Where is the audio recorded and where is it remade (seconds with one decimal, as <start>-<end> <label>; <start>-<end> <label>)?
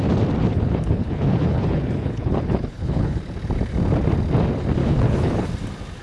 0.0-0.4 recorded; 0.4-3.2 remade; 3.2-4.8 recorded; 4.8-5.5 remade; 5.5-6.0 recorded